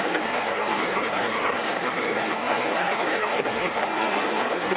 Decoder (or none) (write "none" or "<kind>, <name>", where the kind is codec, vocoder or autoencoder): codec, SNAC